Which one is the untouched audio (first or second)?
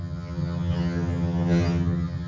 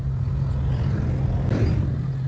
second